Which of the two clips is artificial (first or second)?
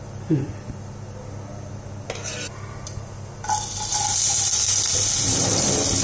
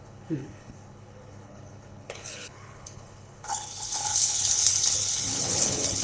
second